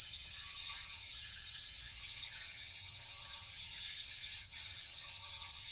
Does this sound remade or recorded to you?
remade